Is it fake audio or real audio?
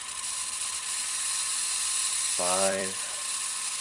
fake